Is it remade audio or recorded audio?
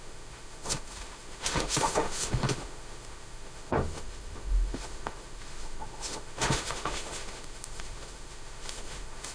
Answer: remade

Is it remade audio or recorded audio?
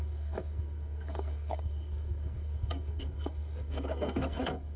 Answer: remade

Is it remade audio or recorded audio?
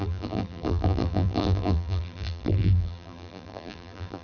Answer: remade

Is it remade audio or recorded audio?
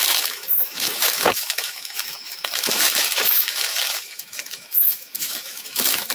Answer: remade